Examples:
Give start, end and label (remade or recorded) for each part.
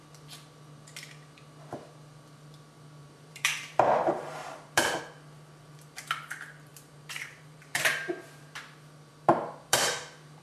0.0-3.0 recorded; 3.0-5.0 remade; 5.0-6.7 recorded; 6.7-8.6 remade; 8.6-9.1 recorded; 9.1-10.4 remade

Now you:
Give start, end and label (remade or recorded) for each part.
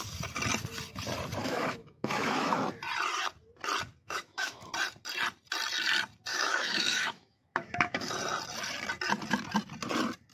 0.0-1.4 recorded; 1.4-2.6 remade; 2.6-4.0 recorded; 4.0-4.7 remade; 4.7-6.3 recorded; 6.3-8.1 remade; 8.1-10.3 recorded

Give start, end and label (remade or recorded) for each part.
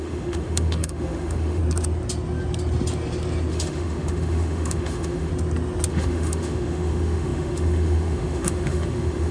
0.0-1.6 remade; 1.6-3.5 recorded; 3.5-5.3 remade; 5.3-5.9 recorded; 5.9-9.3 remade